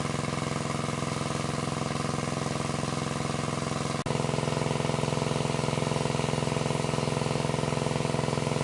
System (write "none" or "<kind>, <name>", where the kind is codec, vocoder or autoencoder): none